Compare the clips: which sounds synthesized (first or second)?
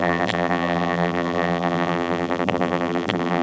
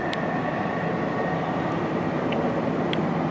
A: first